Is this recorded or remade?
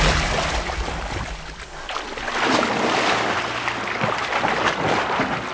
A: recorded